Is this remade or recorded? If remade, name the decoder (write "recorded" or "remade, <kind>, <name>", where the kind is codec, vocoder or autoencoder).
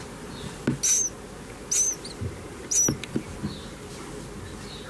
recorded